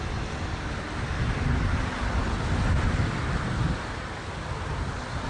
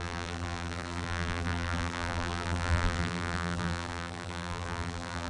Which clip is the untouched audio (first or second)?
first